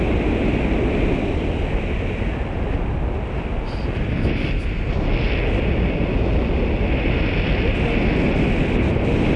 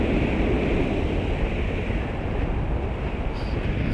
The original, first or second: first